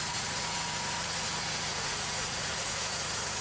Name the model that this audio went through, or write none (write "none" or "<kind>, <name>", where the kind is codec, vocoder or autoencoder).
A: vocoder, Vocos